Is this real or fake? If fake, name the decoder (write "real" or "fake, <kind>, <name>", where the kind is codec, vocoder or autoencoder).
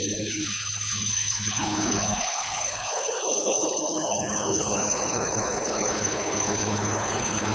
fake, codec, HILCodec